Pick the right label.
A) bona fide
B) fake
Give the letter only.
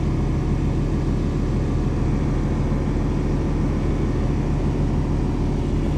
A